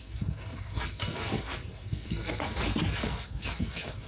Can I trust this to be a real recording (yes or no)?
no